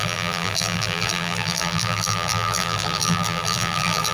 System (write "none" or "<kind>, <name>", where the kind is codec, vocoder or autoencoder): vocoder, BigVGAN v2